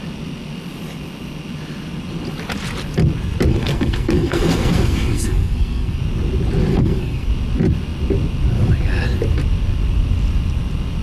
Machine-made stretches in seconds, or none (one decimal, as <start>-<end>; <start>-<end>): 3.5-6.0; 6.7-7.3